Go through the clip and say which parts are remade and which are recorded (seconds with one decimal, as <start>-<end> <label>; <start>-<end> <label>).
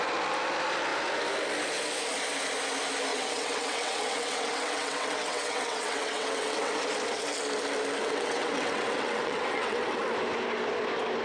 0.0-3.1 recorded; 3.1-6.7 remade; 6.7-8.0 recorded; 8.0-10.0 remade; 10.0-11.2 recorded